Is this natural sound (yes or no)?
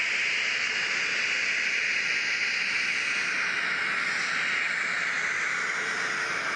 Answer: yes